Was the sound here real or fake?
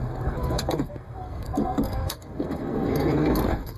fake